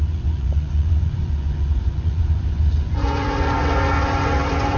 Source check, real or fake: fake